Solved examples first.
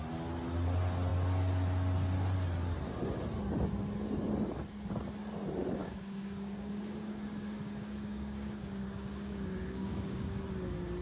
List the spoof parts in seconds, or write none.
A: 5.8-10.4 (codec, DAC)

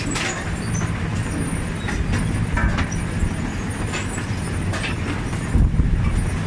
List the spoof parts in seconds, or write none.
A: none

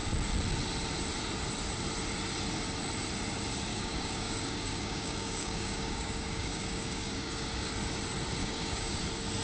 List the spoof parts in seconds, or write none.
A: 3.7-7.7 (codec, DAC); 8.4-9.0

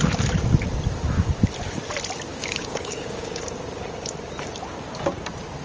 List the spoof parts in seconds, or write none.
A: 2.3-3.4 (codec, DAC)

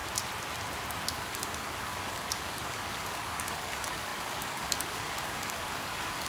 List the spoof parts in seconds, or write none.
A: 1.1-6.3 (codec, DAC)

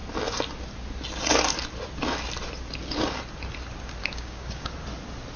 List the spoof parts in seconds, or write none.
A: 4.0-4.7 (codec, DAC)

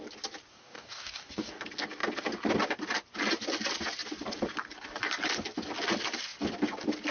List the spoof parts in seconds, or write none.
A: 0.5-1.6 (codec, DAC)